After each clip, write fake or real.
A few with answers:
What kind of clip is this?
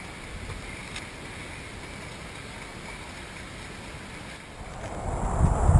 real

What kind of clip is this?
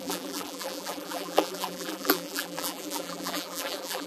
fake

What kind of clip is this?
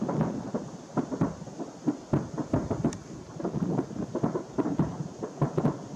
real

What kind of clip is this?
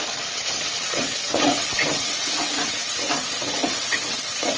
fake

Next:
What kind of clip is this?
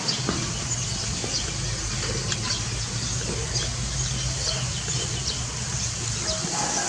real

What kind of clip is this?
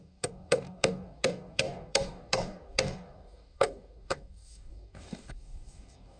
fake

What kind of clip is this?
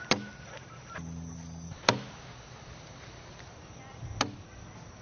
real